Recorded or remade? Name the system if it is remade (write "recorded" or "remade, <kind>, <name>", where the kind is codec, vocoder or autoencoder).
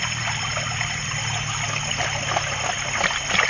recorded